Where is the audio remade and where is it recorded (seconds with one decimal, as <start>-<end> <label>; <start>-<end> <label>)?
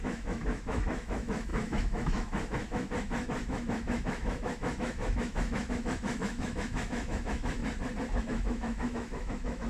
0.0-7.6 remade; 7.6-8.2 recorded; 8.2-9.7 remade